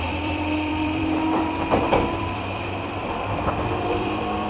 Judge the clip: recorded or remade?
remade